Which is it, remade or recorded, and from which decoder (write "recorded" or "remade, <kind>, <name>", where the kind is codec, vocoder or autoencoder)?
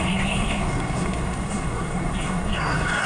remade, codec, SNAC